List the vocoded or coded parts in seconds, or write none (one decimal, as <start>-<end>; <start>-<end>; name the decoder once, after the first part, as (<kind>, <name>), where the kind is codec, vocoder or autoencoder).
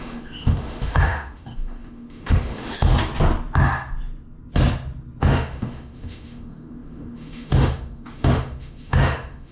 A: 0.0-2.9 (autoencoder, DAC-VAE); 5.2-9.5